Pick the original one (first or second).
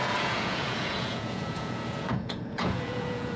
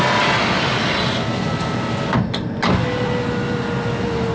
second